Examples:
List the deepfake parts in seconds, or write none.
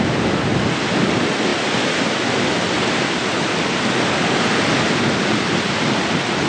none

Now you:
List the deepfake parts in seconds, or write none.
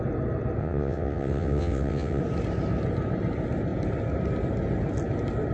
0.6-2.2 (vocoder, WaveNeXt)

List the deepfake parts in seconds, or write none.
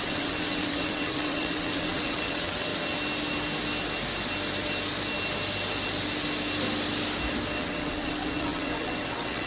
0.0-2.7 (vocoder, WaveNeXt); 7.6-9.5